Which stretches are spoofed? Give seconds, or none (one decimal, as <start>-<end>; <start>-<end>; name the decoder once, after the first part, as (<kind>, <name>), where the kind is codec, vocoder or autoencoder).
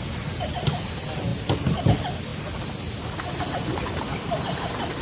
none